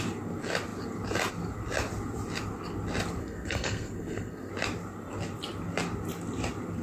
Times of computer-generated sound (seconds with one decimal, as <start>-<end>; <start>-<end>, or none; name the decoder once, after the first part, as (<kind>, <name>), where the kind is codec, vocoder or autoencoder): 3.2-4.5 (codec, SNAC)